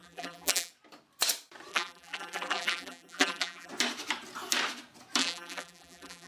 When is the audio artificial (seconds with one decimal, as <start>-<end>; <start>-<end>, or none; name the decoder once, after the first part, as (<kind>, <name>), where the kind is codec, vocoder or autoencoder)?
0.0-0.7 (vocoder, BigVGAN v2); 1.7-3.7; 5.2-6.3

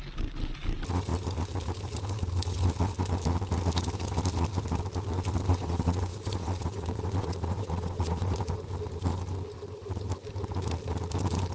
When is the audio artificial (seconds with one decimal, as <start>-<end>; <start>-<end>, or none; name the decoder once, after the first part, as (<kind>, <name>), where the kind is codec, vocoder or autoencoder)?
5.5-8.4 (vocoder, WaveNeXt)

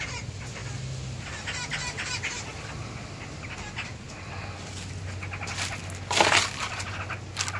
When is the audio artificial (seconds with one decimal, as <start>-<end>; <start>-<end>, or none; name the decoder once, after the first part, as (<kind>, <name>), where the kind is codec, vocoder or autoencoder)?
none

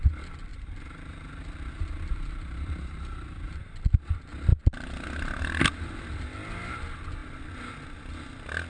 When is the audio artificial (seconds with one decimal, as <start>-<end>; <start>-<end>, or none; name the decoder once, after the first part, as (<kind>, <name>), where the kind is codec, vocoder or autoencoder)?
0.5-3.7 (vocoder, BigVGAN v2)

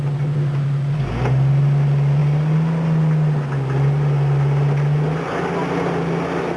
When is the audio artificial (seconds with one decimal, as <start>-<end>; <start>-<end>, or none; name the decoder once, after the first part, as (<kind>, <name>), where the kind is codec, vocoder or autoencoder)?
none

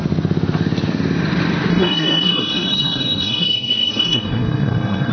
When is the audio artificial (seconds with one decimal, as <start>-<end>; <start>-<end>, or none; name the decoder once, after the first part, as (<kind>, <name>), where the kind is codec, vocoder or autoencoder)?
1.7-5.1 (codec, SNAC)